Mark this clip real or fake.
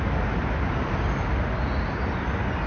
real